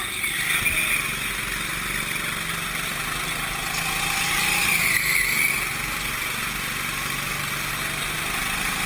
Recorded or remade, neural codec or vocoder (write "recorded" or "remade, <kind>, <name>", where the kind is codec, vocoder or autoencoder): recorded